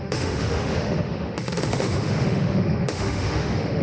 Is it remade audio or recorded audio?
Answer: remade